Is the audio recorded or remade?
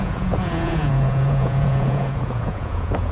remade